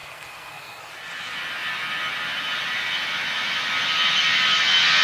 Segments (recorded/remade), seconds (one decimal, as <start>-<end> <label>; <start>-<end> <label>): 0.0-0.9 remade; 0.9-5.0 recorded